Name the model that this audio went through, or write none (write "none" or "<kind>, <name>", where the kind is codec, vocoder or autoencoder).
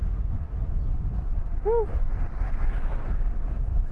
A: none